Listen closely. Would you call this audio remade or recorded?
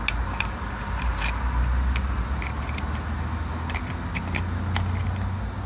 recorded